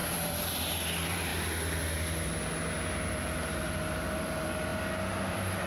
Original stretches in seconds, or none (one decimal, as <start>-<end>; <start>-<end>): 1.3-3.1; 4.7-5.3